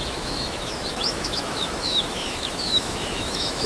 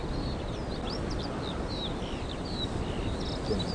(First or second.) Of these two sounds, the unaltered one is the second